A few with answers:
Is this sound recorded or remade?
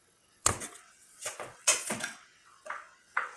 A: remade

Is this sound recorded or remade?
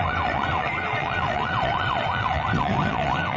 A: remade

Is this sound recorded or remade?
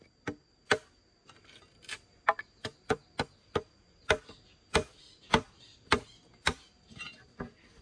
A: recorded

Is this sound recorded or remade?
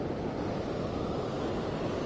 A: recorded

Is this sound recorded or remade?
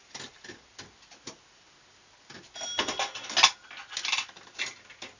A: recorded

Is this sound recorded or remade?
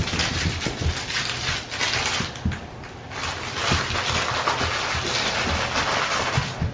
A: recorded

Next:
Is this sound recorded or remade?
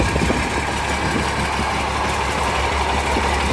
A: recorded